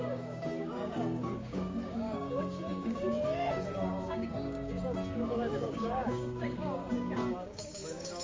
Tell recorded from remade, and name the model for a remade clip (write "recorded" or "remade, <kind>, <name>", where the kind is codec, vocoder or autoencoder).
remade, codec, DAC